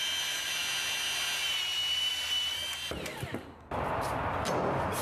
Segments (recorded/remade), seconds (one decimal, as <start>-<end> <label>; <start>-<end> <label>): 0.0-5.0 recorded